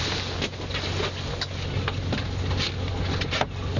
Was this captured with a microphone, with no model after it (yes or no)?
yes